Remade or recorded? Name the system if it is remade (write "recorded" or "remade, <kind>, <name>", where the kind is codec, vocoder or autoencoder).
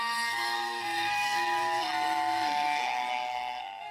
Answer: remade, codec, SNAC